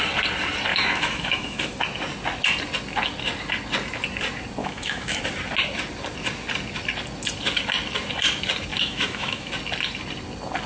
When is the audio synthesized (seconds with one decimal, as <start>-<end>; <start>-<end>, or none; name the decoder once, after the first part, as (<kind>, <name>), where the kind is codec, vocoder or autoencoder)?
0.7-1.8 (autoencoder, DAC-VAE); 4.6-5.2; 8.7-9.5